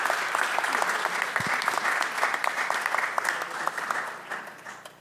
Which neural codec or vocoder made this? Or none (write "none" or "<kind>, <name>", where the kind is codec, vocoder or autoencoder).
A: none